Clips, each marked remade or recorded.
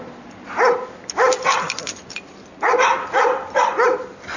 recorded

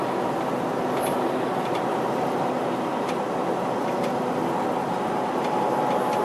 recorded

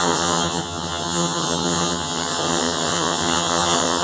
remade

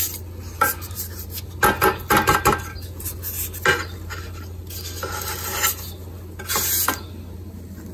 recorded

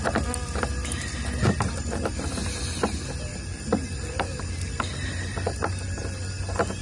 recorded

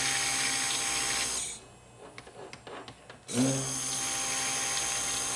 recorded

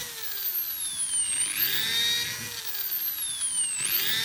recorded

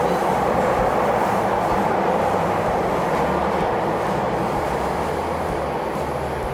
recorded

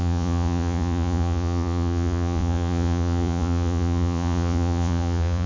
remade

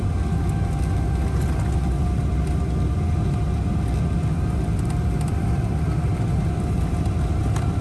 recorded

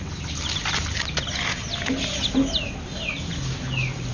recorded